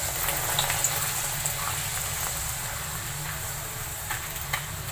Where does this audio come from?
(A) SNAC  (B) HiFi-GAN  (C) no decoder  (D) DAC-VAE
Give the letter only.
C